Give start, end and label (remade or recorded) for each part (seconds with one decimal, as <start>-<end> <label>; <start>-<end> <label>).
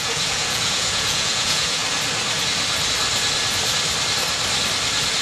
0.0-1.8 remade; 1.8-5.2 recorded